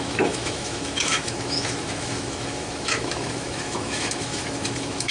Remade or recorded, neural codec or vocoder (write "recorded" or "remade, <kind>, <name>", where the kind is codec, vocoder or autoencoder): remade, autoencoder, DAC-VAE